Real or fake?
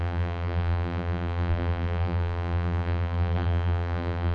fake